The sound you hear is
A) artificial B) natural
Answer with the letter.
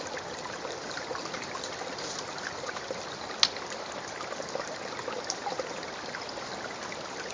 B